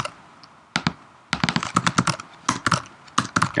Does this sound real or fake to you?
real